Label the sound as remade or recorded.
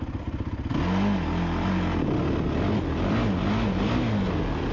recorded